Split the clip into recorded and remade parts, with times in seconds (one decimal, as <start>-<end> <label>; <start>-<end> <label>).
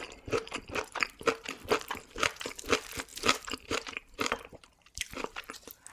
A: 0.0-3.1 recorded; 3.1-5.1 remade; 5.1-5.9 recorded